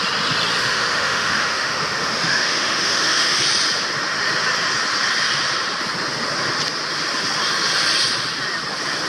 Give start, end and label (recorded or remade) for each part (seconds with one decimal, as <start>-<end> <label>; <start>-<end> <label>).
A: 0.0-0.6 recorded; 0.6-3.4 remade; 3.4-9.1 recorded